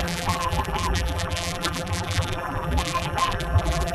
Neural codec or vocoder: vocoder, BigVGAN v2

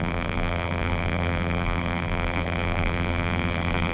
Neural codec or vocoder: vocoder, BigVGAN v2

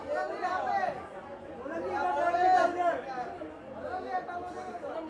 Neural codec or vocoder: none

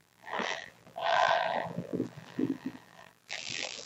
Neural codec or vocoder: vocoder, BigVGAN v2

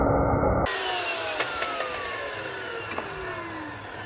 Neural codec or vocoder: none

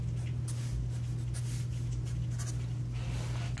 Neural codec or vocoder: none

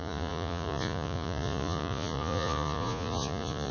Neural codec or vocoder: vocoder, Vocos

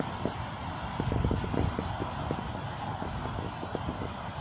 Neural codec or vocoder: none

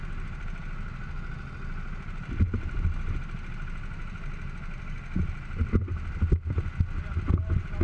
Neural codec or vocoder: none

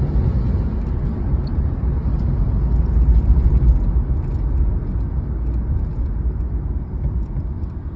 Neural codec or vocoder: none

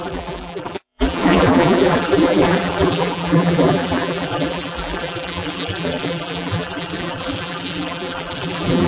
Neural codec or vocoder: vocoder, BigVGAN v2